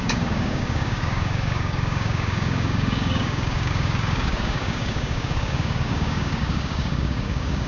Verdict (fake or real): fake